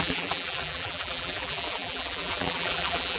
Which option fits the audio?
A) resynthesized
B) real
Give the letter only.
A